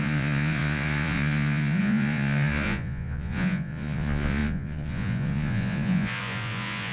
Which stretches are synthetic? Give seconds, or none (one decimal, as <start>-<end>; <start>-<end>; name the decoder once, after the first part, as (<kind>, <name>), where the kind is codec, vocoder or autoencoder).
0.0-6.9 (vocoder, Vocos)